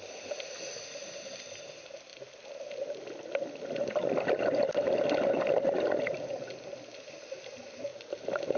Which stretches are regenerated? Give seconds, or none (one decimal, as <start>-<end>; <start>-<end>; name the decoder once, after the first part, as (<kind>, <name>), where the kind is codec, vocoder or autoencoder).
none